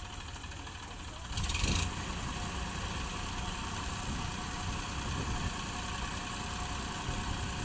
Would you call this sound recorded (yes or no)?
yes